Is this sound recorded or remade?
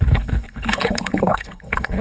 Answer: remade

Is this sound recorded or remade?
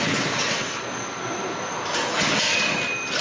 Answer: recorded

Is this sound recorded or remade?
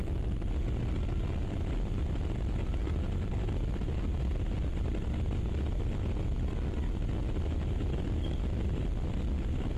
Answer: recorded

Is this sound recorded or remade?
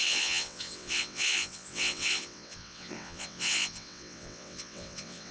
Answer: remade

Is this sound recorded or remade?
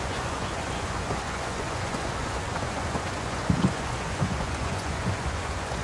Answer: remade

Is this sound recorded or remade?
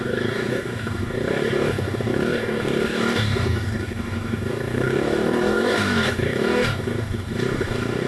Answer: remade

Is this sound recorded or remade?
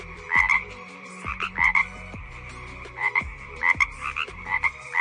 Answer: remade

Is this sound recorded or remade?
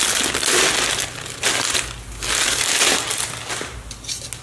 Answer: recorded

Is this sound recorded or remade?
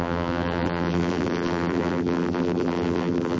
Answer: remade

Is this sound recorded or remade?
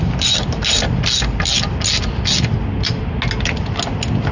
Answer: recorded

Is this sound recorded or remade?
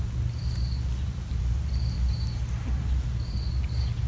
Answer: recorded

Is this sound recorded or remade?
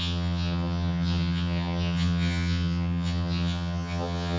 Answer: remade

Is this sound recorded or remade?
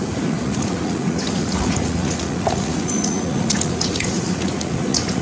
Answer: remade